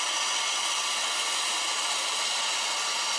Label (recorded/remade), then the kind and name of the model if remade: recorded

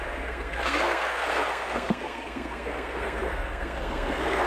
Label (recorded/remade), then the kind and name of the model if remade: remade, codec, SNAC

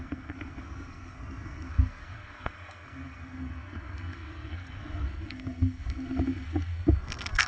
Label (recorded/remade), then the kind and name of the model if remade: remade, codec, SNAC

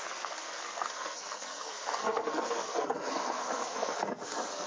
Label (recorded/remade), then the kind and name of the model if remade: remade, codec, SNAC